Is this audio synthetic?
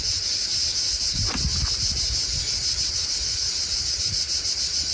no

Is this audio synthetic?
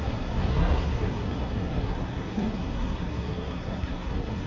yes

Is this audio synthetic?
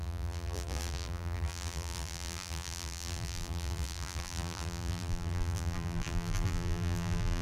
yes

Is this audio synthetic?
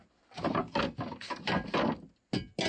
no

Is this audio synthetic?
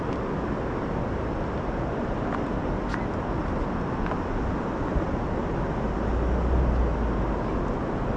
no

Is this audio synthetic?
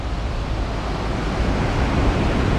no